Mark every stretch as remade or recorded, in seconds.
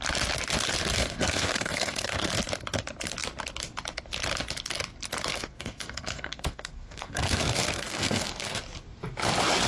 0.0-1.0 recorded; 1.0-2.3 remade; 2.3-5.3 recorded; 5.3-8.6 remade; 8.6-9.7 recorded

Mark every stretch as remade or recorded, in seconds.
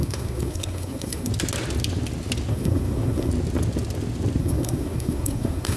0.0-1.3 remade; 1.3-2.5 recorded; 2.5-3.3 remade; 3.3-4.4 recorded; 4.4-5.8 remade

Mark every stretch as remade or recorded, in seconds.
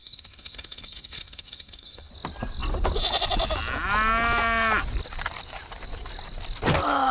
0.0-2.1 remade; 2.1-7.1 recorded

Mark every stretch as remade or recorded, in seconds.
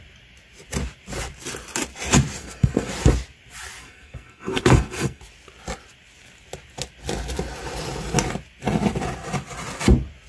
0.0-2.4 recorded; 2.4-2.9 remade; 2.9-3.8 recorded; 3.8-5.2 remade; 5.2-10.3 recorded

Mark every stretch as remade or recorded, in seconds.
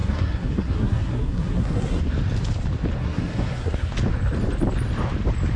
0.0-2.0 remade; 2.0-3.0 recorded; 3.0-3.9 remade; 3.9-5.6 recorded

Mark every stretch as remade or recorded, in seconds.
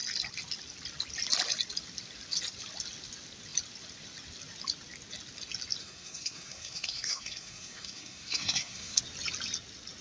0.0-5.8 recorded; 5.8-9.0 remade; 9.0-10.0 recorded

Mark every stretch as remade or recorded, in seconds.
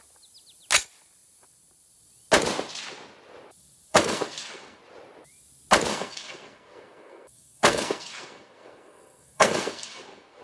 0.0-3.9 recorded; 3.9-4.8 remade; 4.8-5.9 recorded; 5.9-10.4 remade